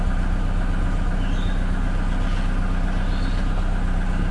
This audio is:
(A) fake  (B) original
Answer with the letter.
B